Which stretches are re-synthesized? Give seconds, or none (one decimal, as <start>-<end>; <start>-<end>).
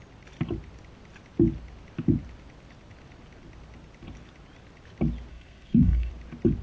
5.3-6.1